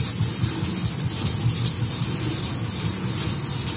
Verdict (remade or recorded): recorded